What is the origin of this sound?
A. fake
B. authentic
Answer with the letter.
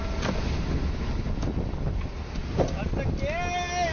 B